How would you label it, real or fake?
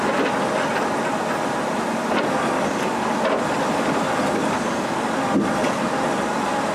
real